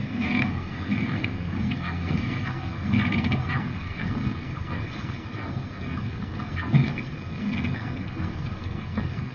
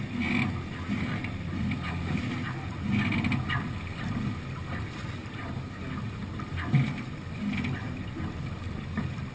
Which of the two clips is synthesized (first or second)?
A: first